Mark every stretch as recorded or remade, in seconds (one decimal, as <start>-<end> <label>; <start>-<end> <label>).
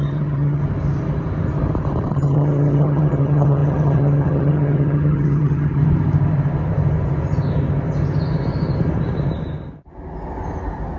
0.0-0.6 remade; 0.6-2.1 recorded; 2.1-5.8 remade; 5.8-11.0 recorded